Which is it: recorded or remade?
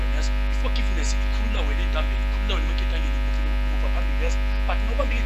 recorded